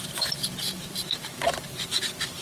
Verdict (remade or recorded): remade